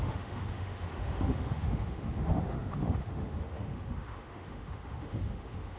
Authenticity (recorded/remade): remade